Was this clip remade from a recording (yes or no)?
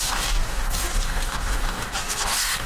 yes